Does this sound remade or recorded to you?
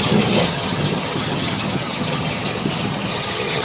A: remade